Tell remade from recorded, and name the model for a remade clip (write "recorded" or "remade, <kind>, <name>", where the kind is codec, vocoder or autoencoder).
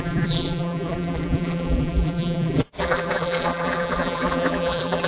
remade, vocoder, BigVGAN v2